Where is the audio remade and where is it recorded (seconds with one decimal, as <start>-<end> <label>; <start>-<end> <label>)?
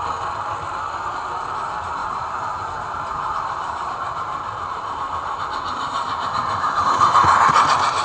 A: 0.0-2.0 recorded; 2.0-6.8 remade; 6.8-8.0 recorded